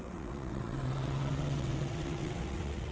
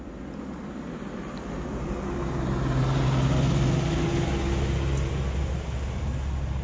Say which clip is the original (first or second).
second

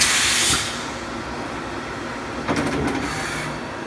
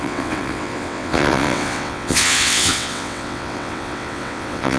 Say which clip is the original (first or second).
first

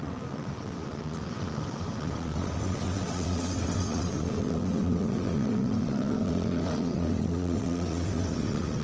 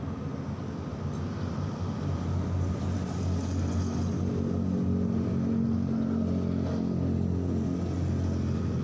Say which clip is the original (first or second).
second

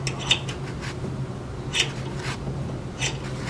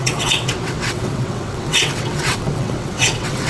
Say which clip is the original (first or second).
first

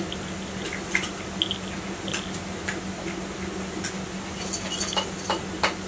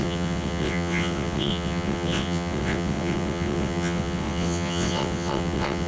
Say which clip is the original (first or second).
first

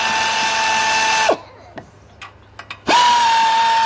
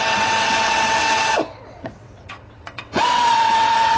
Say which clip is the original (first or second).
first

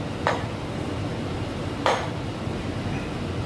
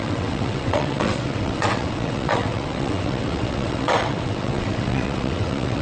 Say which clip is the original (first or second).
first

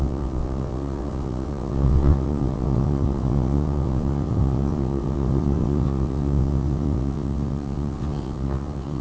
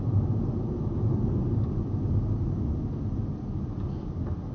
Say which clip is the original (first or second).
second